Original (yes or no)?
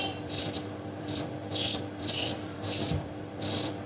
no